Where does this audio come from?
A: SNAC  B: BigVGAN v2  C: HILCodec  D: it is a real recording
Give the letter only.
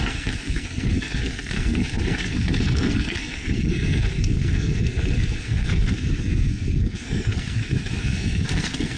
A